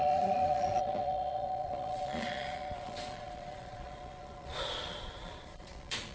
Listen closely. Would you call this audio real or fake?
fake